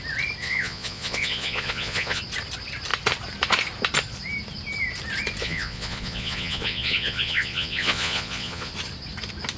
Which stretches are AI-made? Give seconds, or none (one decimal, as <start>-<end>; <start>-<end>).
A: 0.4-2.2; 5.4-8.7